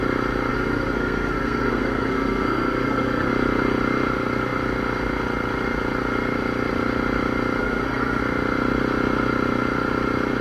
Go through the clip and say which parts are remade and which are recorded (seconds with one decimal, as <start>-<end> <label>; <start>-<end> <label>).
0.0-0.5 recorded; 0.5-3.3 remade; 3.3-7.6 recorded; 7.6-8.2 remade; 8.2-10.4 recorded